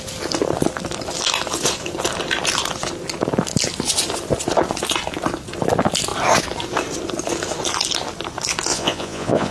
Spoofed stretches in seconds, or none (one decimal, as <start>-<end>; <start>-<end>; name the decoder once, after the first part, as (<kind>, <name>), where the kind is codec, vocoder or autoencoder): 8.7-9.5 (vocoder, Vocos)